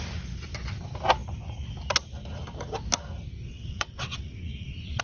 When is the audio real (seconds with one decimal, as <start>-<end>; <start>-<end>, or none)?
0.0-3.5